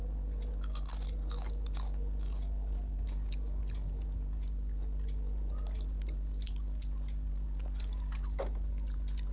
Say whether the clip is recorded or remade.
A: recorded